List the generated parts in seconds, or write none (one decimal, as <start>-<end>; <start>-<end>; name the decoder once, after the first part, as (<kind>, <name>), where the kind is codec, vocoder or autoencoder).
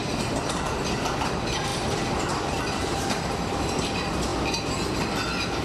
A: 0.0-4.3 (vocoder, BigVGAN v2)